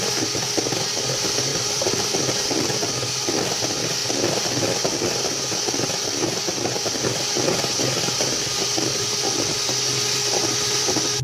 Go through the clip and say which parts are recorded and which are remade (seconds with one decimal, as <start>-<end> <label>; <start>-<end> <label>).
0.0-1.5 recorded; 1.5-2.3 remade; 2.3-10.2 recorded; 10.2-11.2 remade